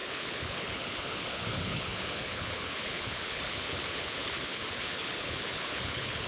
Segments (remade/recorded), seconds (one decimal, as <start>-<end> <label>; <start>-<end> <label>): 0.0-6.3 remade